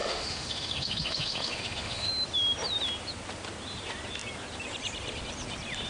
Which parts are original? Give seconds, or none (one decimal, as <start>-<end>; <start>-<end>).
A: 2.1-5.9